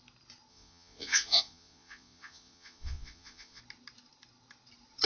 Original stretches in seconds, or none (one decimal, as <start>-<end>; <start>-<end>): 0.0-0.5; 3.6-5.1